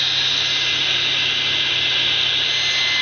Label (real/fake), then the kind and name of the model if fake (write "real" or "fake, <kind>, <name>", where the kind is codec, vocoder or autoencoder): real